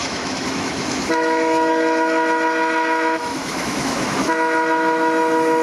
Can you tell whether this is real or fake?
fake